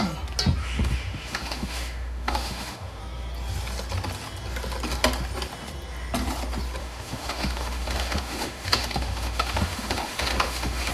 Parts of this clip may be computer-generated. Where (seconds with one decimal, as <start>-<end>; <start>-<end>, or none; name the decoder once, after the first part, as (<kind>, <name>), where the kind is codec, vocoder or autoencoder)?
0.6-3.0 (autoencoder, DAC-VAE); 6.8-10.9